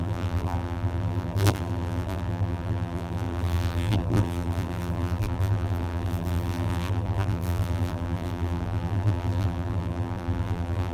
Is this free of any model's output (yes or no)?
no